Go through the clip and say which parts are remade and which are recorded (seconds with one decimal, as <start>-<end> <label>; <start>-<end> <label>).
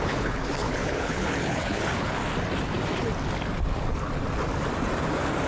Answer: 0.0-2.2 remade; 2.2-5.5 recorded